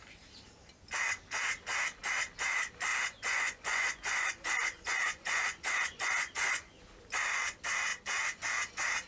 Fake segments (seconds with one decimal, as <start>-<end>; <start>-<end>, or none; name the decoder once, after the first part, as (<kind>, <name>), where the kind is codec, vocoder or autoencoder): 2.9-6.8 (vocoder, Vocos)